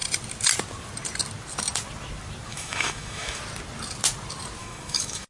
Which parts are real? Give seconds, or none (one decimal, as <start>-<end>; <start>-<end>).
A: 0.0-2.5; 3.4-4.6